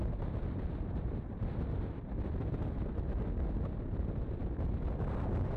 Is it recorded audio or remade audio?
recorded